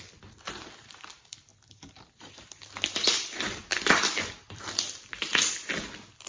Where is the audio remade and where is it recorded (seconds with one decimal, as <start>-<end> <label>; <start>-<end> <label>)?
0.0-1.5 remade; 1.5-2.9 recorded; 2.9-5.3 remade; 5.3-6.3 recorded